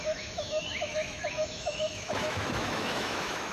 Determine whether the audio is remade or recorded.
remade